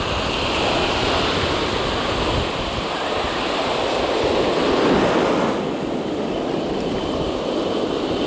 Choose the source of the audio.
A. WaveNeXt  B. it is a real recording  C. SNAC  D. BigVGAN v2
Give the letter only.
B